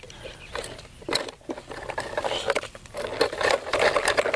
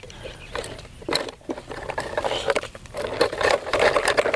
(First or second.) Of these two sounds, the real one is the first